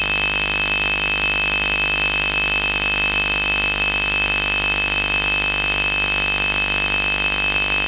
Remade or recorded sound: remade